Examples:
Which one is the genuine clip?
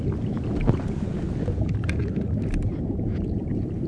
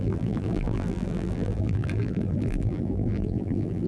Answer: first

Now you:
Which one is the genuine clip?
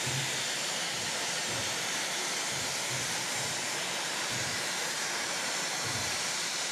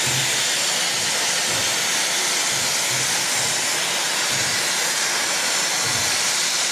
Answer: second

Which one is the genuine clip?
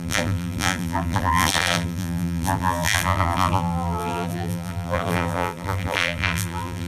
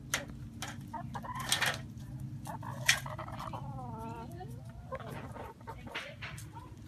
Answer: second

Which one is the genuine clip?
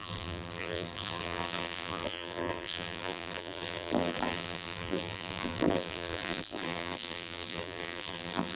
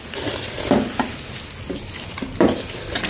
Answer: second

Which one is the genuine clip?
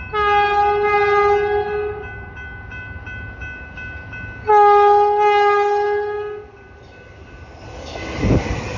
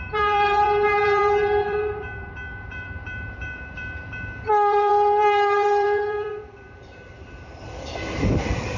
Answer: first